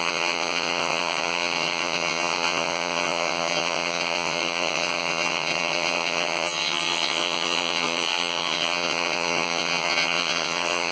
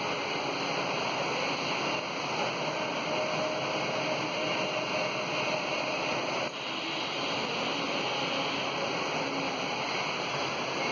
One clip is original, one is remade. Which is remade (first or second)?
first